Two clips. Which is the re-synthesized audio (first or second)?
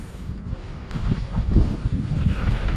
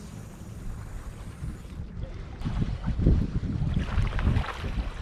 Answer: first